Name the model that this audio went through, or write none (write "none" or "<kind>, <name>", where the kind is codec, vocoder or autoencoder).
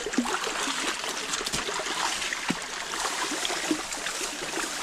none